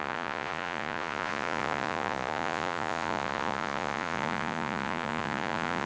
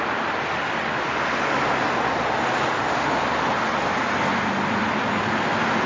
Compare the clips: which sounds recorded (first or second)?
second